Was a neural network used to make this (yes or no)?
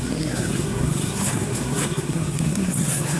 yes